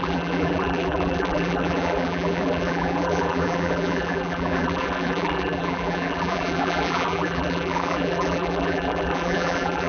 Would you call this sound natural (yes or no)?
no